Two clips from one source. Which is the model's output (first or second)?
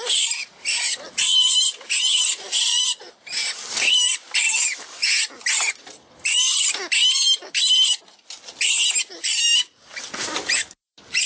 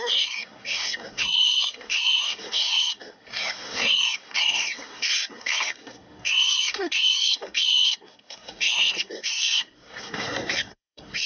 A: second